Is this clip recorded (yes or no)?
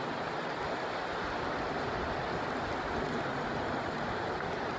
yes